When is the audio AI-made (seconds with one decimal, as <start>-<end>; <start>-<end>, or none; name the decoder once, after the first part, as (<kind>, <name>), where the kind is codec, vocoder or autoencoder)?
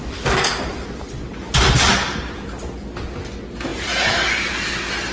0.0-2.4 (vocoder, BigVGAN v2)